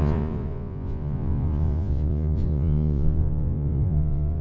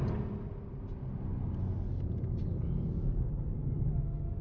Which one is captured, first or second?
second